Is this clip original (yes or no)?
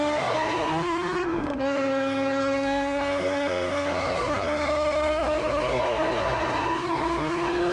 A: no